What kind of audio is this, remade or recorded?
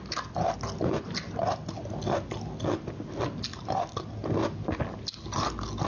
recorded